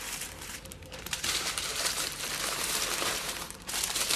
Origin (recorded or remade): remade